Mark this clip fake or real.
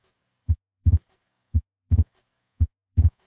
fake